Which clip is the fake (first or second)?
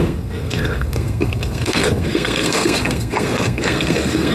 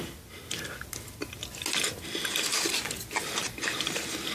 first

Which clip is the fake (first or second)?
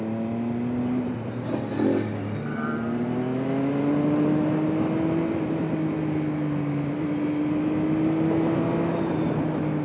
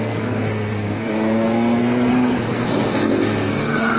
second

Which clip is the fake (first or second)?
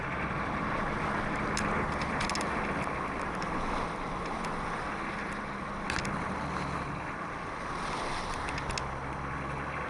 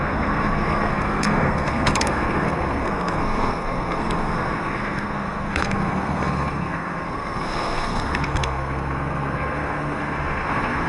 second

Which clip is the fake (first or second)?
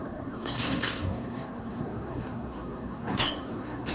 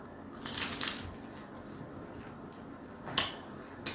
first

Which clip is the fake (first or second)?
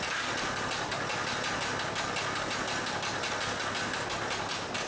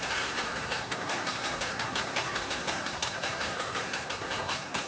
second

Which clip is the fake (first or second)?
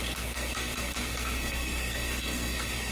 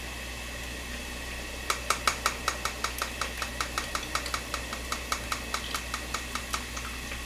first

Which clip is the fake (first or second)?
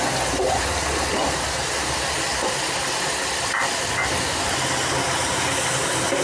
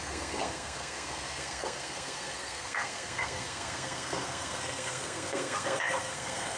second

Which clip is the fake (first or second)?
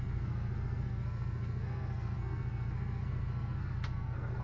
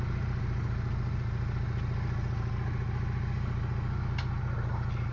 first